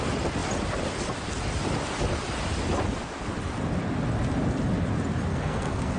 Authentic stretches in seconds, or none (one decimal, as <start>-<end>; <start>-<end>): 0.0-5.3